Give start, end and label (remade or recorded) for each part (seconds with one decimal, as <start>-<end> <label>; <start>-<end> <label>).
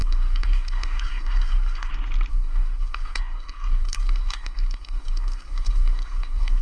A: 0.0-1.9 remade; 1.9-2.3 recorded; 2.3-6.6 remade